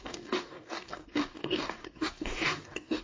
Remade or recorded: remade